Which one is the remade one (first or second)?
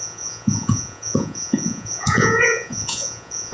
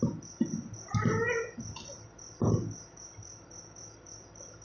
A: first